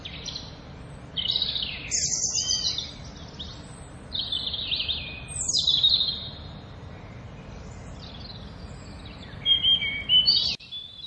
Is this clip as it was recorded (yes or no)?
yes